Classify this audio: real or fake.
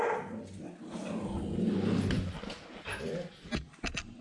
real